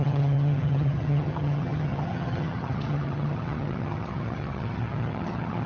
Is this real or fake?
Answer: fake